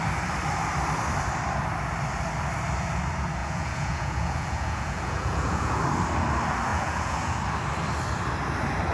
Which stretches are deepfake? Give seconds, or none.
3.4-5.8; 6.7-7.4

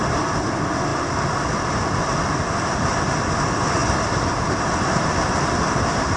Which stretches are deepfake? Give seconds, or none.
none

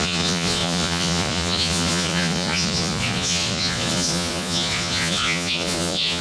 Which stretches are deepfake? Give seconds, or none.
0.0-6.2

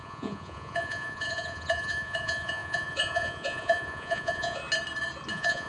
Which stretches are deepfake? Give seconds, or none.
0.0-4.6; 5.3-5.7

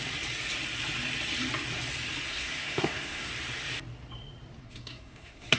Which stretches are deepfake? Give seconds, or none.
2.3-3.3; 4.6-5.6

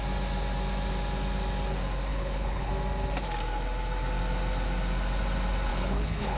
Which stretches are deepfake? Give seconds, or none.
2.1-2.7; 5.7-6.4

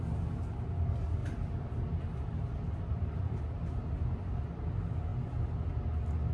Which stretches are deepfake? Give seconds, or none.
1.2-3.4